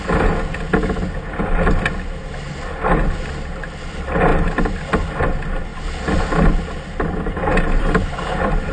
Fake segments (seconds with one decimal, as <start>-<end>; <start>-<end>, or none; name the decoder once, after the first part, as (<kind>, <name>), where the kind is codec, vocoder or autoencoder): none